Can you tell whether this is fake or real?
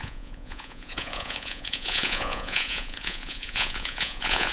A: fake